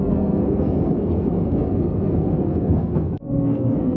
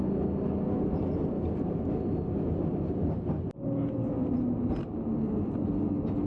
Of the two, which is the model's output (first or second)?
first